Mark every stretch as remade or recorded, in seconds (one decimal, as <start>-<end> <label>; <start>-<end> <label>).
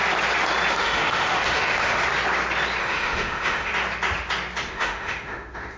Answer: 0.0-0.7 recorded; 0.7-2.0 remade; 2.0-2.8 recorded; 2.8-3.7 remade; 3.7-4.7 recorded; 4.7-5.8 remade